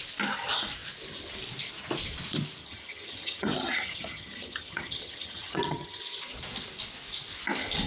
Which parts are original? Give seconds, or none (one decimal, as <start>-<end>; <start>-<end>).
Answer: 0.0-2.6; 6.0-7.9